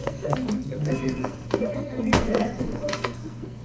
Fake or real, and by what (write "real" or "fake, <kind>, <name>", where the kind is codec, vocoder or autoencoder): fake, codec, SNAC